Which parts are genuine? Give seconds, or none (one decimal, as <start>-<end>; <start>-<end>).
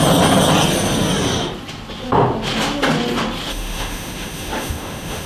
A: 0.0-3.5